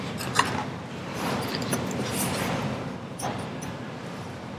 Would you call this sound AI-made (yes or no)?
yes